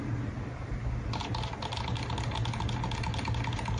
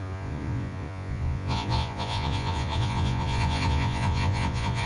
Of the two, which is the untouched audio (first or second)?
first